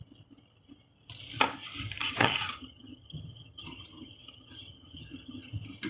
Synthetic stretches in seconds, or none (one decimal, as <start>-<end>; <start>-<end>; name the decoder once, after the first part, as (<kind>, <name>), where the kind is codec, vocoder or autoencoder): 2.0-5.5 (vocoder, HiFi-GAN)